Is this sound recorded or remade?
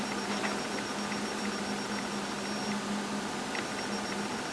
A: recorded